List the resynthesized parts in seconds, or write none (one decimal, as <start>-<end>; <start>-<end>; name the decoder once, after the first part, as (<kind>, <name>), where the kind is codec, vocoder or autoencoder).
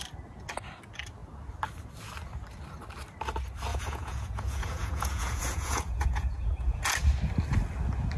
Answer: 3.7-6.8 (vocoder, Vocos)